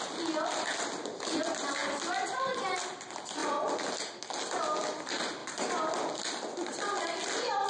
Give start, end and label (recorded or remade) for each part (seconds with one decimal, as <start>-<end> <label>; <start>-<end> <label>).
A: 0.0-7.7 recorded